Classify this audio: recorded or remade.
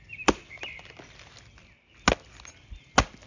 recorded